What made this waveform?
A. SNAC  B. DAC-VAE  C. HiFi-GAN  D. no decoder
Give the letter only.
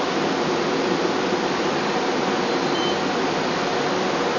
D